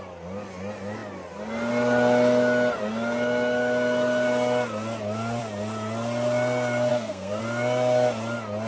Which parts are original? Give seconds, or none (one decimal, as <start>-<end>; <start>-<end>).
0.0-6.9; 7.4-8.7